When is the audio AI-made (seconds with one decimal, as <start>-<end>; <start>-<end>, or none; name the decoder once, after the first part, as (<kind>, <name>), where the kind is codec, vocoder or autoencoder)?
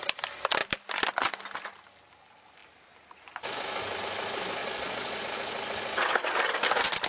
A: 4.6-5.2 (vocoder, Vocos)